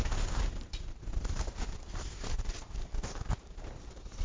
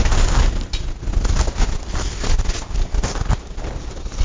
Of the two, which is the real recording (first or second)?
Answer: second